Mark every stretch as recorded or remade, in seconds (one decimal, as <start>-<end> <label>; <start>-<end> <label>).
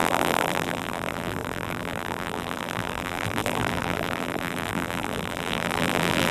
0.0-6.3 remade